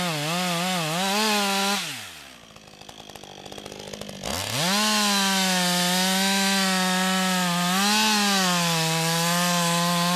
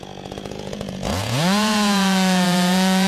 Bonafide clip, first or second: first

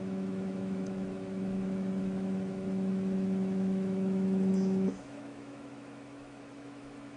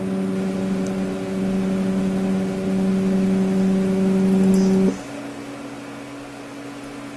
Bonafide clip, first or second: second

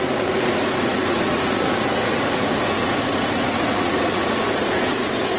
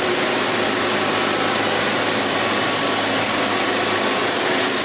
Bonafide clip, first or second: second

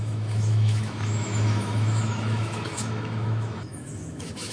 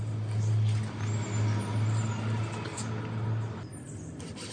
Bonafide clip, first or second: second